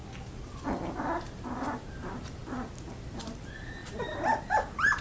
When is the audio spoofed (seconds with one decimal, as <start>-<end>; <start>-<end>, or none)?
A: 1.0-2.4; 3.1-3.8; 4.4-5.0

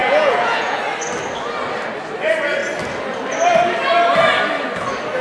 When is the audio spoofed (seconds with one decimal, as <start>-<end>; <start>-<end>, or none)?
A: 0.0-0.8

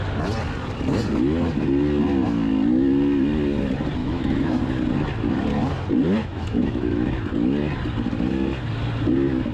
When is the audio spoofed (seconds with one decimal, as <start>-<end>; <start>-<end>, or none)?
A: 4.0-4.6; 6.2-7.1

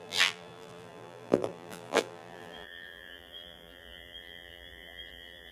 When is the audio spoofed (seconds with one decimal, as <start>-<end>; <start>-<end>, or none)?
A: 0.0-5.5

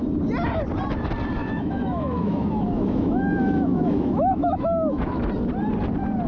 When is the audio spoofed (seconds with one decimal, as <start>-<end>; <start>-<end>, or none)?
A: 1.4-5.2

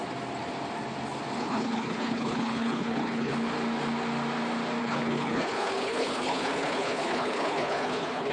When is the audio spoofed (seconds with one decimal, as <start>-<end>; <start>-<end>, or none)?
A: 1.4-3.3; 4.8-8.3